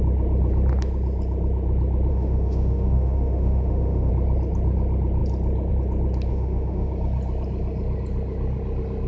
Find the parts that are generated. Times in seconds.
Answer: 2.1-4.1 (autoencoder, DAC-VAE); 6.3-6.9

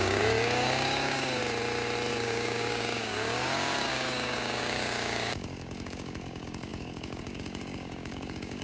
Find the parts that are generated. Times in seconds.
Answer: 0.0-1.4 (codec, DAC); 2.1-8.6

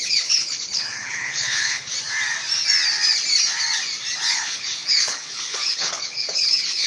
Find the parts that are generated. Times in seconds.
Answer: 0.0-1.9 (codec, HILCodec); 4.3-6.9

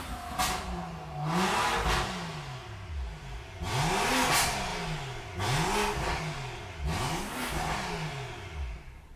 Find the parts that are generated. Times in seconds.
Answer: none

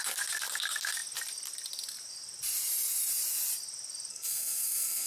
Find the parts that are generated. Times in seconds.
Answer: 4.1-5.1 (codec, SNAC)

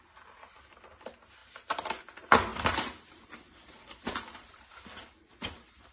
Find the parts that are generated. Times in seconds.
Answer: none

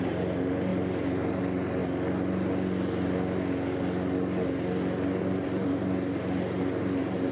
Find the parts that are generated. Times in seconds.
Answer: 0.0-1.8 (vocoder, BigVGAN v2); 5.2-7.3

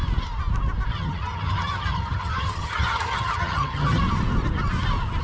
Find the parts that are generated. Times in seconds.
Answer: 0.9-4.0 (vocoder, HiFi-GAN)